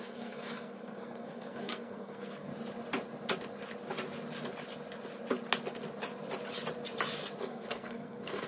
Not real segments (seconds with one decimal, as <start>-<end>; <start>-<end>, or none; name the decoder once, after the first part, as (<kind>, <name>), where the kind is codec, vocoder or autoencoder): 0.0-2.5 (codec, SNAC); 7.4-8.5